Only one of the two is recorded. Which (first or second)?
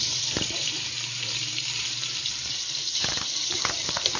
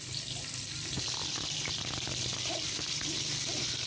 second